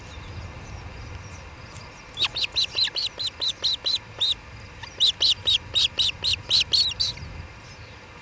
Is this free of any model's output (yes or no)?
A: yes